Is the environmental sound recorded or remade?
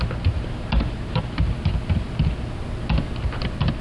recorded